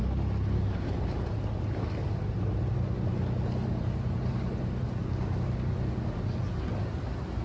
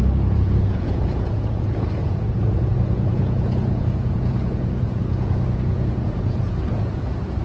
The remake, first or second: second